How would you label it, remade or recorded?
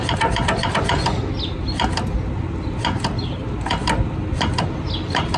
recorded